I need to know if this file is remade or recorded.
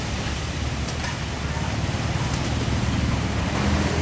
recorded